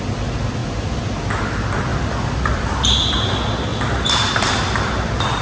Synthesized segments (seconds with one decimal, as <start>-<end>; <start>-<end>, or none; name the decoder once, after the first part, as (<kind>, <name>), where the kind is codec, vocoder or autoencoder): 1.9-3.1 (vocoder, BigVGAN v2); 3.7-4.3